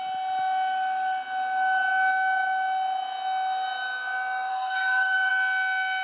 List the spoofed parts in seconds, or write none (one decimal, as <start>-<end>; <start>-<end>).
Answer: 4.5-5.3